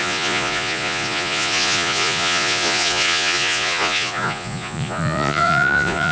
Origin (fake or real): fake